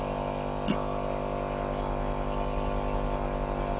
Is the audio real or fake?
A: real